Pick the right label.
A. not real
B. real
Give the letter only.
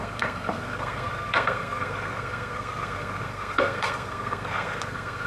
A